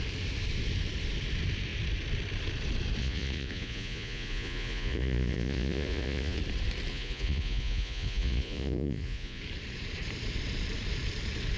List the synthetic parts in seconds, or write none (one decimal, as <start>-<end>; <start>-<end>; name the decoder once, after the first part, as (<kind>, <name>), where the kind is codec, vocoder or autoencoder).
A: 3.0-6.4 (vocoder, Vocos); 6.9-9.4